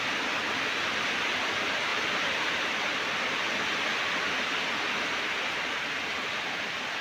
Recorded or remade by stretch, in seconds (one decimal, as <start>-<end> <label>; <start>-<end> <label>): 0.0-7.0 recorded